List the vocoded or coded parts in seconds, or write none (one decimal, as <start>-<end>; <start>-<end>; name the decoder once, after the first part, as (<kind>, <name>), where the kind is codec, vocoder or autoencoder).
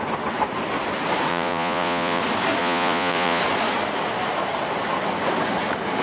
1.3-2.2 (vocoder, Vocos); 2.6-3.4